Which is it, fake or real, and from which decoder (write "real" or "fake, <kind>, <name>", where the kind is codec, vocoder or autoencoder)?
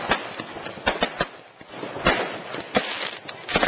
real